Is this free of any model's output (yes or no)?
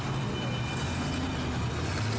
yes